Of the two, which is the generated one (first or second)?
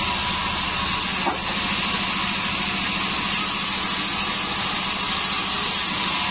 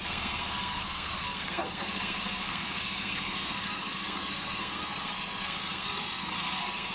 second